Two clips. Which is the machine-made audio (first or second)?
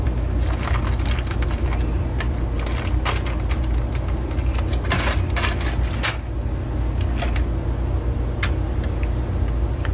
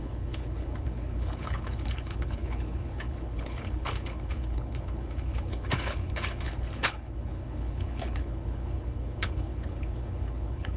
second